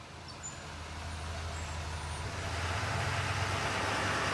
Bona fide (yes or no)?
yes